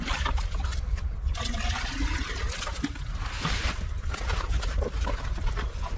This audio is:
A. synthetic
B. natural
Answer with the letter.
B